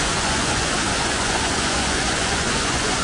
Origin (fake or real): fake